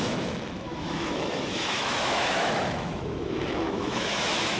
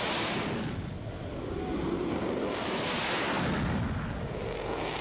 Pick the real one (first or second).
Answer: second